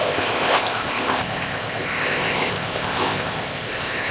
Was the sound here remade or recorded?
remade